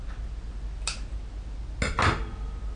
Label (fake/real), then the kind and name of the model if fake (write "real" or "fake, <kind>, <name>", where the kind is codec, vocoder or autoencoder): real